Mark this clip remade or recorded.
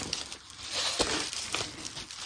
remade